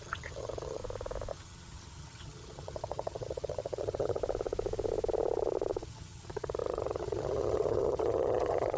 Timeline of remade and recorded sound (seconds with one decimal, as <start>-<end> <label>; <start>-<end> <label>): 0.0-0.8 remade; 0.8-1.3 recorded; 1.3-4.2 remade; 4.2-5.8 recorded; 5.8-8.8 remade